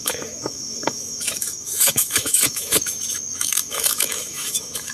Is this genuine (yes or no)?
no